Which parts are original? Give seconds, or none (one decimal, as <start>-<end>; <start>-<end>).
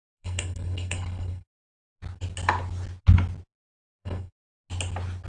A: 1.5-3.5; 4.3-5.3